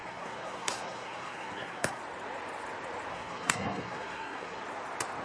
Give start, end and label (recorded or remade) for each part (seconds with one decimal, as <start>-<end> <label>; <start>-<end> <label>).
0.0-2.0 remade; 2.0-3.1 recorded; 3.1-4.6 remade; 4.6-5.2 recorded